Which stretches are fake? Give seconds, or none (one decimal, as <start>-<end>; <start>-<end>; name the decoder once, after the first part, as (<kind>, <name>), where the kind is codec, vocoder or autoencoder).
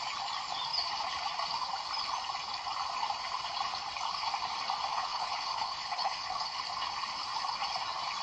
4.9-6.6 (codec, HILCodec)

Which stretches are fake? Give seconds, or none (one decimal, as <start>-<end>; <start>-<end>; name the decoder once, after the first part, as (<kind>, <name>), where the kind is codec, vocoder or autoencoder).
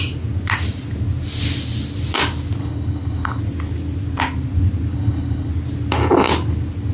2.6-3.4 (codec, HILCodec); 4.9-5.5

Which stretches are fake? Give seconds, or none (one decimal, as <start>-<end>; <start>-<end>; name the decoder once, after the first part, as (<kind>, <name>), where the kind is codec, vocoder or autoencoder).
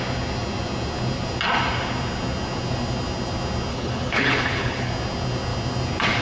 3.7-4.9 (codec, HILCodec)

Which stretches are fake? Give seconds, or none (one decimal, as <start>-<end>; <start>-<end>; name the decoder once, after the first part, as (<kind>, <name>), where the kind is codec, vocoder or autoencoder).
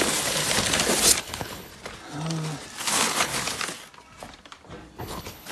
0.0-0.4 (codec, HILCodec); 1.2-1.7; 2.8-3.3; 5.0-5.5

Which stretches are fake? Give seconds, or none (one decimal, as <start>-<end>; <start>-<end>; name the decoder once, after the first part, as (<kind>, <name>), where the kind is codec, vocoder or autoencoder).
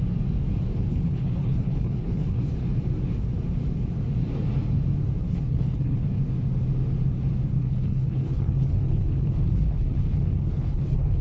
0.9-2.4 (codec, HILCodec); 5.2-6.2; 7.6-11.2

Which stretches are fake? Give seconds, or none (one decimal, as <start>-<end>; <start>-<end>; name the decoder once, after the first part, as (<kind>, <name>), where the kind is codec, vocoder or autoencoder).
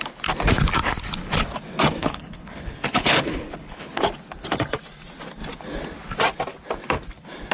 2.0-4.0 (codec, HILCodec)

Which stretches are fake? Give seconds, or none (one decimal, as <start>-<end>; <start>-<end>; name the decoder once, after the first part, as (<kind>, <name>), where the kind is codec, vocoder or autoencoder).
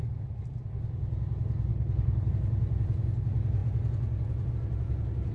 1.7-2.3 (codec, HILCodec)